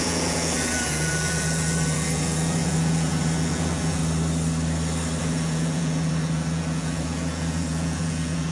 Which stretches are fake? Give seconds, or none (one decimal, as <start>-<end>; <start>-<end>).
0.0-4.0; 5.2-8.5